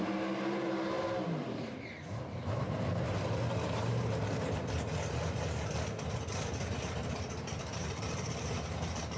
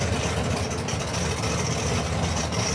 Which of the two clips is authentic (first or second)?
second